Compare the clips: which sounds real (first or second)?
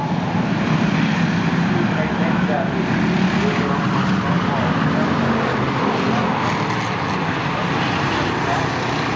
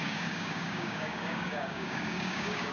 first